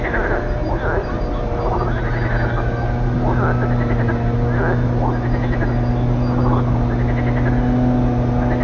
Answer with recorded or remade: recorded